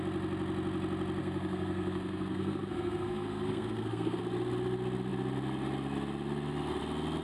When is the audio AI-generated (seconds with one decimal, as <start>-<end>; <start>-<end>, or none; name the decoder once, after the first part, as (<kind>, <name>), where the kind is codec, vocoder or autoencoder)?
1.2-4.2 (codec, SNAC)